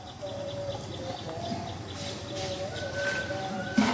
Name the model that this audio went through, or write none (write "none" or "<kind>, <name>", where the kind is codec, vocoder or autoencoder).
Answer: none